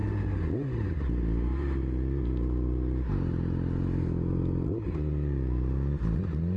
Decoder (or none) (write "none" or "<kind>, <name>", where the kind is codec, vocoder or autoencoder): none